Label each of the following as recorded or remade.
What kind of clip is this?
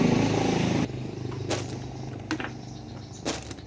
recorded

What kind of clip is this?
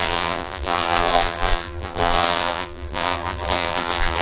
remade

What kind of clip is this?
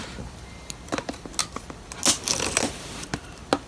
recorded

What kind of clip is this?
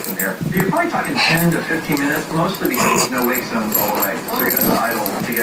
recorded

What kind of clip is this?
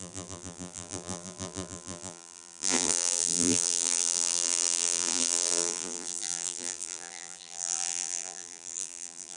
remade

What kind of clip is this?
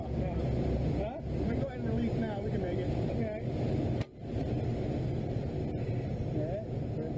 recorded